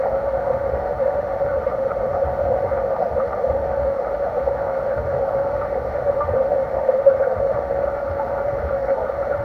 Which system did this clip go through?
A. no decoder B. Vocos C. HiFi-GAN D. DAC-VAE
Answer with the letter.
D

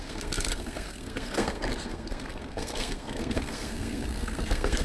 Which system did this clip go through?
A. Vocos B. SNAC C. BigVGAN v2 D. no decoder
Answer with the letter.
B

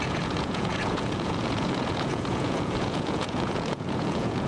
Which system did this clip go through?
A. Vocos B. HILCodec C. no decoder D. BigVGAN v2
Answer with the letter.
A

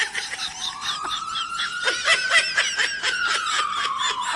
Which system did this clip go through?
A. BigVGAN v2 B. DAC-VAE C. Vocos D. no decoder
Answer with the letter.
D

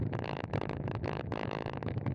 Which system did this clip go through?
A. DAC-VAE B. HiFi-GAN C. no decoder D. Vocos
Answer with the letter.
A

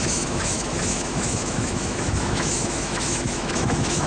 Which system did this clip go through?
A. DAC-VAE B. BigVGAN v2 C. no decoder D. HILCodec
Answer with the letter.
A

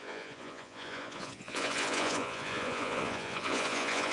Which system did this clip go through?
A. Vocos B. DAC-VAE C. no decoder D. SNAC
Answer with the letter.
A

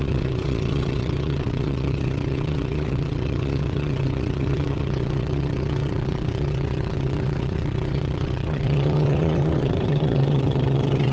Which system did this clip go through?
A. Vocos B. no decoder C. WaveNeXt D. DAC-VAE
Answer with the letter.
C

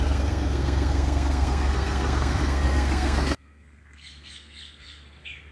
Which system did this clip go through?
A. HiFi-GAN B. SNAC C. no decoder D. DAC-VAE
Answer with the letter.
B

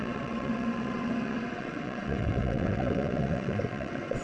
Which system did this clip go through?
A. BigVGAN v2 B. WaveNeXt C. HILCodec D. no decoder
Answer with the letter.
B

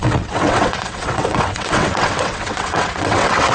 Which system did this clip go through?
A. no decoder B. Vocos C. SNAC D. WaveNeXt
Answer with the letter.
D